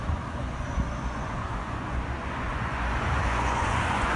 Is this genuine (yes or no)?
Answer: no